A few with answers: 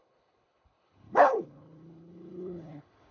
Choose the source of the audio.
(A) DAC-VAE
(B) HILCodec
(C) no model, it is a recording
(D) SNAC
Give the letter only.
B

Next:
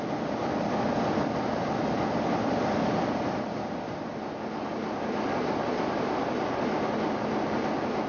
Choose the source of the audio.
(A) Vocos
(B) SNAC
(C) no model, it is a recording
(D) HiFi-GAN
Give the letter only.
C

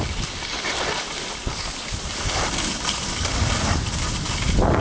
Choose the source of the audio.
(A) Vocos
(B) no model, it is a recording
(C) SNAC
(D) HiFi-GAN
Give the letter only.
B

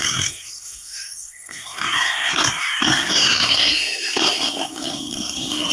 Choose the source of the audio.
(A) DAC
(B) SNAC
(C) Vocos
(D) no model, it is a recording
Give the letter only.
B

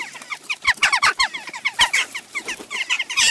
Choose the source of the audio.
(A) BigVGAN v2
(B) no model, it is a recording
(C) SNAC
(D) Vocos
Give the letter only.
A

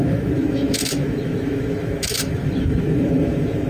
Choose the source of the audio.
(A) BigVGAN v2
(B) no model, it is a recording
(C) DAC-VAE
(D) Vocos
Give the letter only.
C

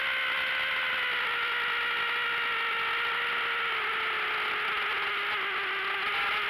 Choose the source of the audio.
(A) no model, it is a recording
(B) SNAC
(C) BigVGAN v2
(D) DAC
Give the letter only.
A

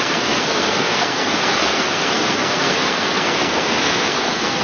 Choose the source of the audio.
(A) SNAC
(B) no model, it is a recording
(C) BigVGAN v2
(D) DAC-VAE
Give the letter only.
A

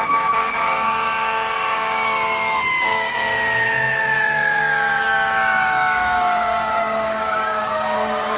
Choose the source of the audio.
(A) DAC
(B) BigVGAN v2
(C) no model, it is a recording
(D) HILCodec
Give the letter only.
A